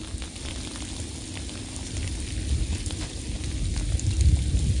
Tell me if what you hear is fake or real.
real